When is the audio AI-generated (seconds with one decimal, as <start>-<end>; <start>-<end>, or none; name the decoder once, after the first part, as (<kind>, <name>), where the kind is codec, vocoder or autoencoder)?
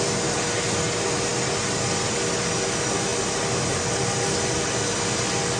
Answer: none